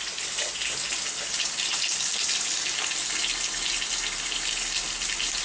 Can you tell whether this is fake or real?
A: real